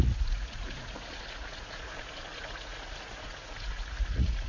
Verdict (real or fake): fake